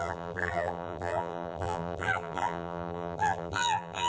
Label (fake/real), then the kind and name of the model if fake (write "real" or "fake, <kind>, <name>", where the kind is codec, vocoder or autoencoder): fake, vocoder, BigVGAN v2